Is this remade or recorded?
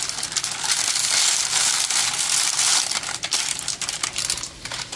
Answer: recorded